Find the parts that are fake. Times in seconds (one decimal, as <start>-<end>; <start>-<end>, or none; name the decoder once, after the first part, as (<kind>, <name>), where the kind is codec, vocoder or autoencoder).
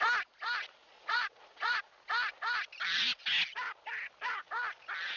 0.8-1.9 (vocoder, Vocos)